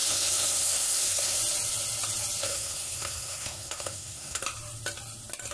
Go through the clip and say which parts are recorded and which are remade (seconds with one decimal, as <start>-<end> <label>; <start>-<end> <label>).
0.0-1.4 remade; 1.4-2.4 recorded; 2.4-4.4 remade; 4.4-5.5 recorded